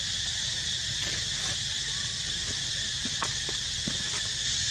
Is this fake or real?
real